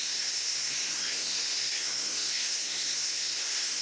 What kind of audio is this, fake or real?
fake